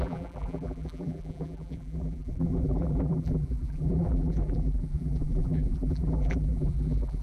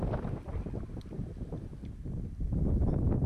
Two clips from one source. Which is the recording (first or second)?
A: second